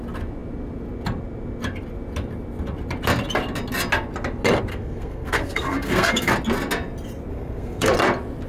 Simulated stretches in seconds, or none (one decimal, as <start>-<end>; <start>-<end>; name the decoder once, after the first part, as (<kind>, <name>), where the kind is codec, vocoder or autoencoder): 4.7-6.3 (codec, SNAC); 7.3-7.9